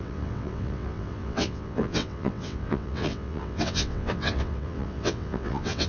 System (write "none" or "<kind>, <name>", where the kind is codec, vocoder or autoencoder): vocoder, WaveNeXt